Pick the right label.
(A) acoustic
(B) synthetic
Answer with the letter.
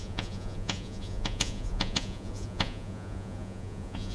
B